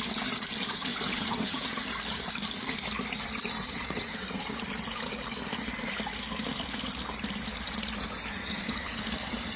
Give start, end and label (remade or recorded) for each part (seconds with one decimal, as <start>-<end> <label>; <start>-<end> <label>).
0.0-0.6 recorded; 0.6-1.8 remade; 1.8-3.7 recorded; 3.7-4.4 remade; 4.4-8.4 recorded; 8.4-9.0 remade; 9.0-9.6 recorded

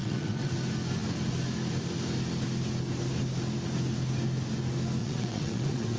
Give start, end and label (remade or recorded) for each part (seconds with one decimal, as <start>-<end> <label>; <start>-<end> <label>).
0.0-0.5 remade; 0.5-5.0 recorded; 5.0-6.0 remade

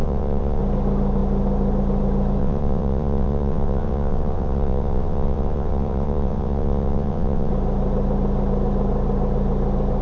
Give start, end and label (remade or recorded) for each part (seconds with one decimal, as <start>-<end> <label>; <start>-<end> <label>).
0.0-0.6 remade; 0.6-2.4 recorded; 2.4-7.5 remade; 7.5-10.0 recorded

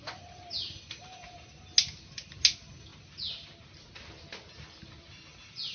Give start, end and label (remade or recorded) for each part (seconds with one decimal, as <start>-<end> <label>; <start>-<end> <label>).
0.0-5.7 recorded